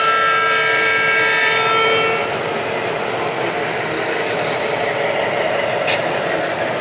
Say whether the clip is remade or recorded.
recorded